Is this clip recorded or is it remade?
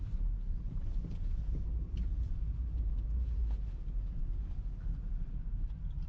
remade